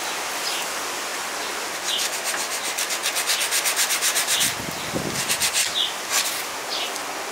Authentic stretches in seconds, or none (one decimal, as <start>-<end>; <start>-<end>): 0.0-7.3